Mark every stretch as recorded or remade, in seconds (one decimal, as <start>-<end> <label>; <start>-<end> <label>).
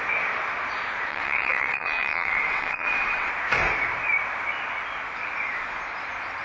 0.0-1.1 recorded; 1.1-3.3 remade; 3.3-6.4 recorded